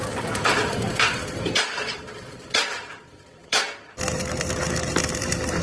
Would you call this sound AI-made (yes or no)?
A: yes